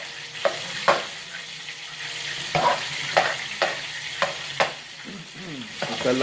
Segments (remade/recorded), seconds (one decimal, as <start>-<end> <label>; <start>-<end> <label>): 0.0-6.2 recorded